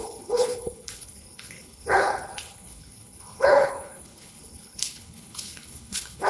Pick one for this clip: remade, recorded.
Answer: remade